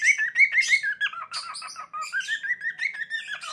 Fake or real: real